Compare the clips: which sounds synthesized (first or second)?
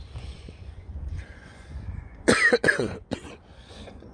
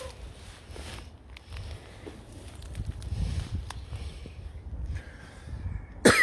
first